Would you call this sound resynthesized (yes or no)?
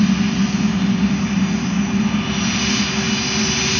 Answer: no